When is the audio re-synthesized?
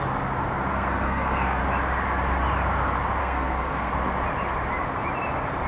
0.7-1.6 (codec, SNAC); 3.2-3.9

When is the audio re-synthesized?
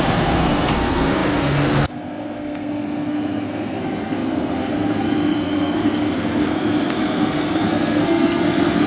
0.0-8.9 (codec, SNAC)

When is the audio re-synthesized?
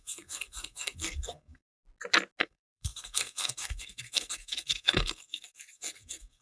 0.0-1.8 (codec, SNAC); 2.4-6.4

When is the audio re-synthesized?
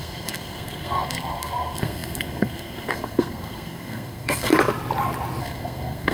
0.0-4.5 (codec, SNAC); 5.4-6.1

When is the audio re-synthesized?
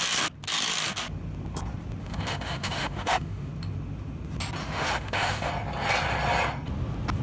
2.0-3.5 (autoencoder, DAC-VAE); 4.6-5.5